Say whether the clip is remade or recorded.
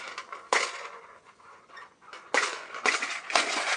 remade